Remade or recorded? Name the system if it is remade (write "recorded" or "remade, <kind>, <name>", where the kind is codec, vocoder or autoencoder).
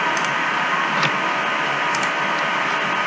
recorded